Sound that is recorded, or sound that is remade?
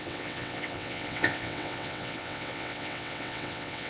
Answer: remade